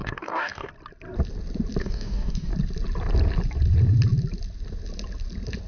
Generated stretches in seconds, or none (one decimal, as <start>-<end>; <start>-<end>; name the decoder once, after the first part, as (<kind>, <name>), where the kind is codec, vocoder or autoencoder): 0.0-0.7 (codec, DAC); 1.8-2.5